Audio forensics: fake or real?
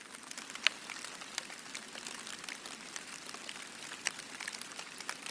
real